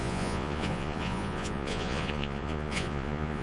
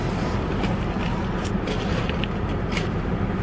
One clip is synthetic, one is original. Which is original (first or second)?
second